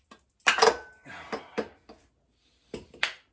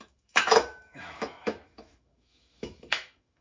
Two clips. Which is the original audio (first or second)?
first